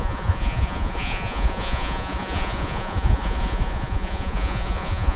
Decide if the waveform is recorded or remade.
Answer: remade